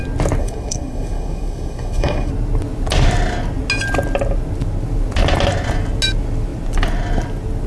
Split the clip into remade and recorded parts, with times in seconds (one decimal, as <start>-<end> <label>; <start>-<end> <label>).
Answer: 0.0-0.4 recorded; 0.4-2.3 remade; 2.3-7.7 recorded